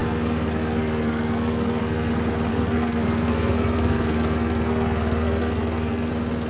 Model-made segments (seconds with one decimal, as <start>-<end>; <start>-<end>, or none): 0.0-2.1; 2.5-6.1